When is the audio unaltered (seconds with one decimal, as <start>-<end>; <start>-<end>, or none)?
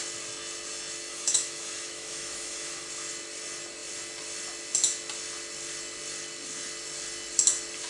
0.0-1.1; 2.9-7.9